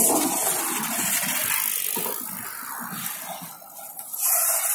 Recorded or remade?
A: recorded